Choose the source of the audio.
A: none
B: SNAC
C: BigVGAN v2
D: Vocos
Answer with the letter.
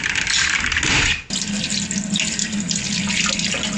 A